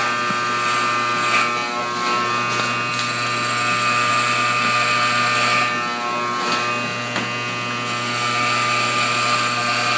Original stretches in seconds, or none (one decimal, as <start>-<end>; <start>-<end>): 0.0-10.0